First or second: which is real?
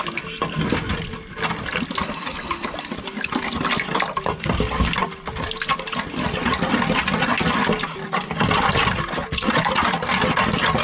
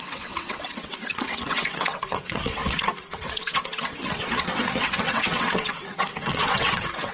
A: first